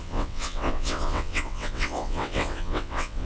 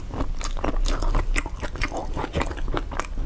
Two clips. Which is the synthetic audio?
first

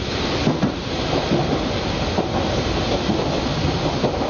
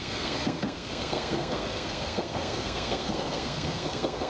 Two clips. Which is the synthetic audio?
second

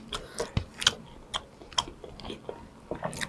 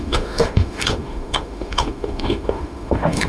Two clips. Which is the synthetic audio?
second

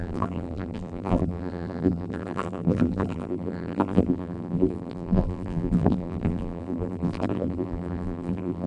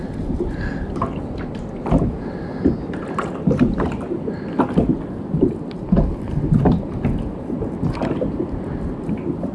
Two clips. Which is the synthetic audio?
first